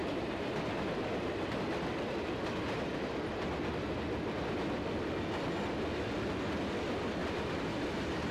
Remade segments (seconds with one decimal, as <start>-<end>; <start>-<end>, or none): 0.0-1.6; 7.2-7.7